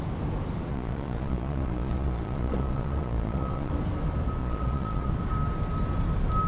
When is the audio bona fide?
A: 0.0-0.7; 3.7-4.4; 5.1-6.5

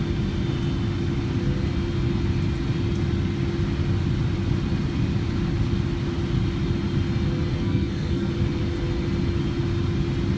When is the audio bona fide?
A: 0.0-7.5; 8.3-10.4